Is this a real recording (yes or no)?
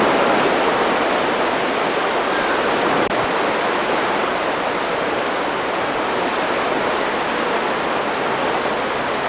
yes